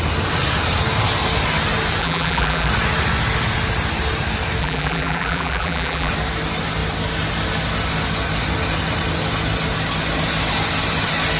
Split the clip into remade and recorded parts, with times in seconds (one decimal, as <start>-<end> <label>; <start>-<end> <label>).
0.0-2.0 recorded; 2.0-2.7 remade; 2.7-4.6 recorded; 4.6-6.1 remade; 6.1-11.4 recorded